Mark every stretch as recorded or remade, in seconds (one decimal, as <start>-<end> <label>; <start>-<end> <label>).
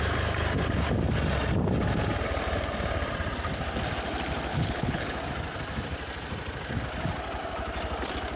0.0-4.5 recorded; 4.5-5.2 remade; 5.2-8.4 recorded